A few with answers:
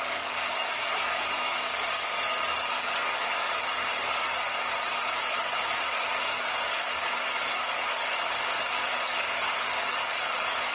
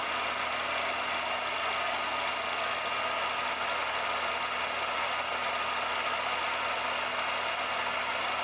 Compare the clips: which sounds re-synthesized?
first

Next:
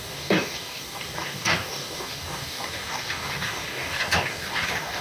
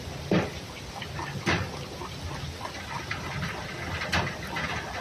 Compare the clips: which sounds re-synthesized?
first